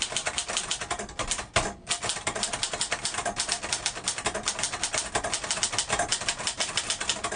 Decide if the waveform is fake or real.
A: real